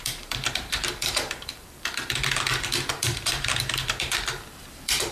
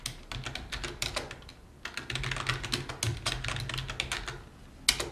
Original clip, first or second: second